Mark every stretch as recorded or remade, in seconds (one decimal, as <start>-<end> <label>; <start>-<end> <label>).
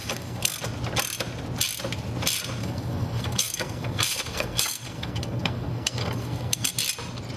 0.0-0.6 remade; 0.6-2.6 recorded; 2.6-6.7 remade; 6.7-7.4 recorded